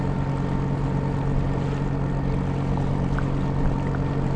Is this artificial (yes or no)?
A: no